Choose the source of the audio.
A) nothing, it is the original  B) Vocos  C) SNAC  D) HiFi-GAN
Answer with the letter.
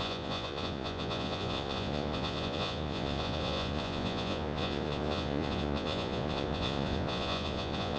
B